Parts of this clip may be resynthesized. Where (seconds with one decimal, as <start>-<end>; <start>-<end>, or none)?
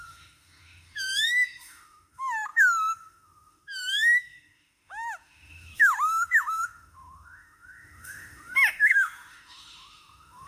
0.0-10.5